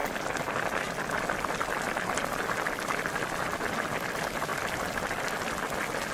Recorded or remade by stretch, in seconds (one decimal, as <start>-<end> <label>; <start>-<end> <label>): 0.0-6.1 recorded